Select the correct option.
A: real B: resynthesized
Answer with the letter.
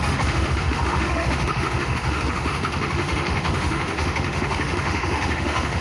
B